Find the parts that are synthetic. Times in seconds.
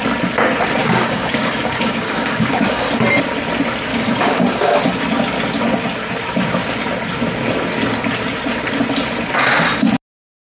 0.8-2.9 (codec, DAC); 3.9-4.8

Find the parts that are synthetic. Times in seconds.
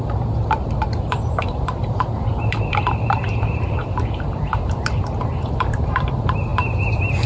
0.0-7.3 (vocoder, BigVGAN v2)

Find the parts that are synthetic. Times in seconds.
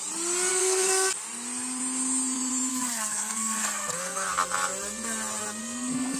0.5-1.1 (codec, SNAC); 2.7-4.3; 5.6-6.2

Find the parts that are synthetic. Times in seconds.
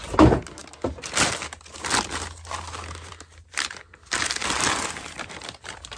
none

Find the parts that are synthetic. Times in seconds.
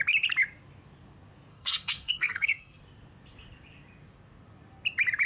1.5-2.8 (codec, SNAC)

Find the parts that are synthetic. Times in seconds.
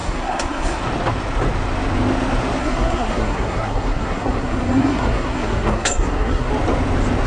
0.0-0.8 (codec, SNAC); 2.6-6.5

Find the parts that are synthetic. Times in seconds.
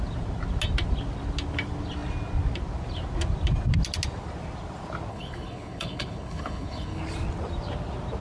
5.1-7.0 (codec, HILCodec)